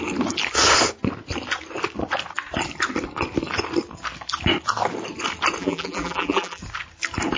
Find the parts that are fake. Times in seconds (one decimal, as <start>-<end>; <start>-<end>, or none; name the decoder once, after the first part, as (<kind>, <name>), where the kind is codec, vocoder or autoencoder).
5.6-6.6 (vocoder, BigVGAN v2)